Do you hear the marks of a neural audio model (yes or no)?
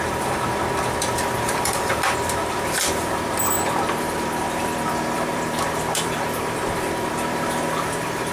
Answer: yes